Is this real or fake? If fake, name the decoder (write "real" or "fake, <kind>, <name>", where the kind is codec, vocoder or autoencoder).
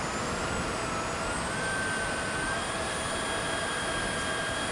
real